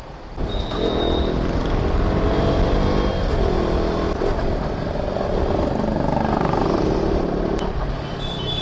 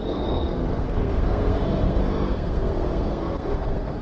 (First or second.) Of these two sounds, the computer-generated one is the second